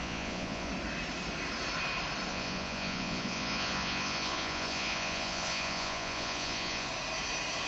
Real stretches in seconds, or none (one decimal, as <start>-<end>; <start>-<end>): 0.7-2.3; 6.9-7.7